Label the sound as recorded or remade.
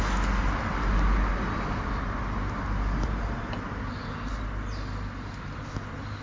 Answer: recorded